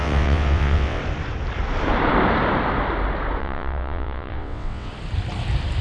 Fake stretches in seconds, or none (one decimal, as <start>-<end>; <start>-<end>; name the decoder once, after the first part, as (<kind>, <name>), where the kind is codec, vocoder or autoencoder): 0.0-1.0 (vocoder, WaveNeXt); 3.4-4.9